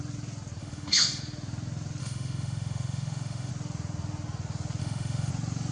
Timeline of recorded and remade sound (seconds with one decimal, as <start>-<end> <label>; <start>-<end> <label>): 0.0-0.6 recorded; 0.6-1.2 remade; 1.2-2.0 recorded; 2.0-3.5 remade; 3.5-4.8 recorded; 4.8-5.3 remade; 5.3-5.7 recorded